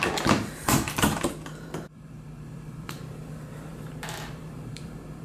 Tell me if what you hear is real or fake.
fake